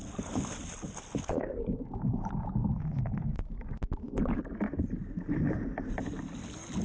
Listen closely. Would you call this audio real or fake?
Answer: real